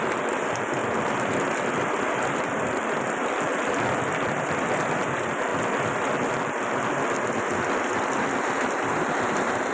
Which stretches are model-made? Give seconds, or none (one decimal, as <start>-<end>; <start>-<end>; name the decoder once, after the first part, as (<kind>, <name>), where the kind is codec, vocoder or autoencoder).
0.0-0.8 (vocoder, BigVGAN v2); 3.4-5.5; 8.7-9.7

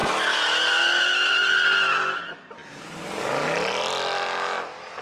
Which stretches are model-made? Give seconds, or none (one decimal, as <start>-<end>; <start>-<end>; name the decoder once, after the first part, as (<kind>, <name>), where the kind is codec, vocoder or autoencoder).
none

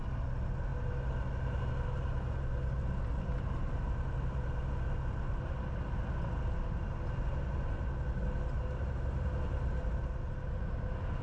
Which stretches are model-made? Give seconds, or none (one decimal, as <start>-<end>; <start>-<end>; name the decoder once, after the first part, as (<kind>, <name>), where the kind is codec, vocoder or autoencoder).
none

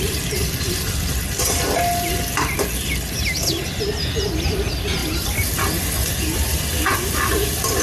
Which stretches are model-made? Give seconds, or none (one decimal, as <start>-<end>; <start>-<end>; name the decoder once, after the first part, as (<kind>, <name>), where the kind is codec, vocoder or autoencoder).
none

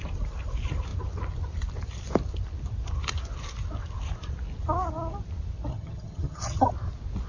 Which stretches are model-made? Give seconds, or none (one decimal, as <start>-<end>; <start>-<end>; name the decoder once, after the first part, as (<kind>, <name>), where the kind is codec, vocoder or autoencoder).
5.7-6.7 (vocoder, HiFi-GAN)

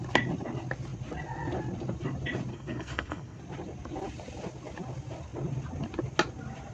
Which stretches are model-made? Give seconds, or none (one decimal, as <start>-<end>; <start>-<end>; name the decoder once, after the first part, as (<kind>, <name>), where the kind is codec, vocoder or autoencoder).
2.5-3.4 (codec, SNAC)